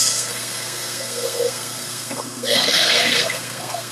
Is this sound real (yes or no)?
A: no